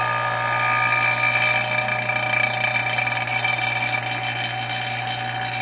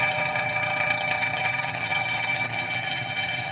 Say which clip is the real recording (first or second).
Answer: first